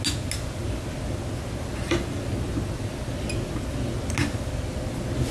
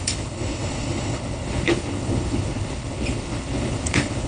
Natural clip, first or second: first